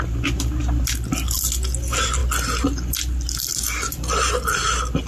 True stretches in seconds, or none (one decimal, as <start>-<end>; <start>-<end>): 0.0-5.1